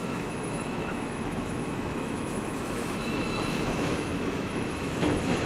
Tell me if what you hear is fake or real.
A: fake